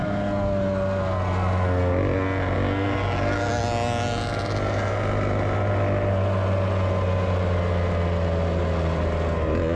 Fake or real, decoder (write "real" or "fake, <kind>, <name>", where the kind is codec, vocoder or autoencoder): real